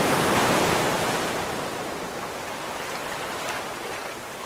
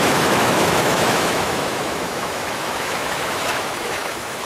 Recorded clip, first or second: first